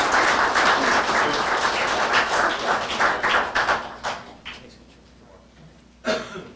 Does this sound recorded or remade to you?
recorded